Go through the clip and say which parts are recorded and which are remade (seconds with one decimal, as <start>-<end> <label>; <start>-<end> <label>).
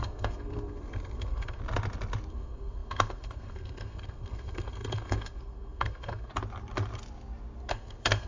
0.0-1.6 remade; 1.6-2.3 recorded; 2.3-6.3 remade; 6.3-7.7 recorded; 7.7-8.3 remade